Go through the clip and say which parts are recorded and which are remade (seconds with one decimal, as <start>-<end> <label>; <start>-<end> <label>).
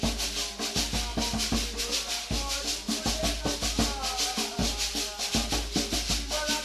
0.0-6.6 recorded